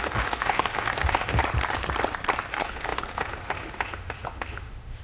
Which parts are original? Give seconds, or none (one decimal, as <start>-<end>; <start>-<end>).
1.4-2.5